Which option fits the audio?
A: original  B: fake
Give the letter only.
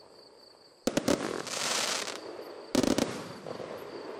A